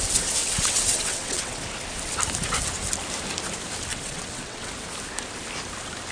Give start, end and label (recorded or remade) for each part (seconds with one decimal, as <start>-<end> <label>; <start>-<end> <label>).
0.0-0.4 recorded; 0.4-1.6 remade; 1.6-3.9 recorded; 3.9-4.7 remade; 4.7-6.1 recorded